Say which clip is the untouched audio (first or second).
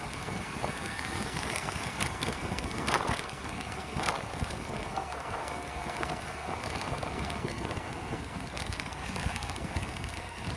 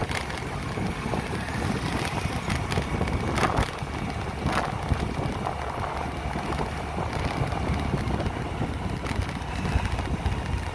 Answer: second